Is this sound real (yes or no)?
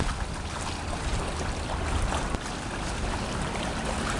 yes